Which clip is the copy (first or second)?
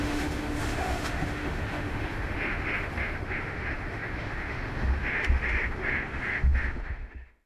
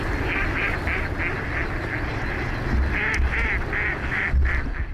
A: first